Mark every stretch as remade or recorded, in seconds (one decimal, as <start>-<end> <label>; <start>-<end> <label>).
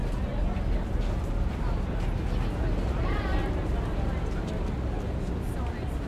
0.0-6.1 recorded